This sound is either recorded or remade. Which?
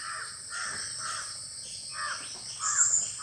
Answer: recorded